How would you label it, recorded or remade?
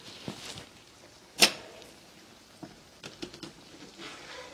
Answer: remade